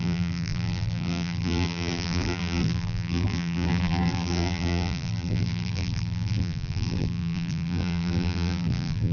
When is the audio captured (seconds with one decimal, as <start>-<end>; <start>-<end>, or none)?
none